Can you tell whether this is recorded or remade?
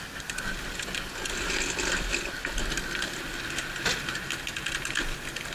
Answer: recorded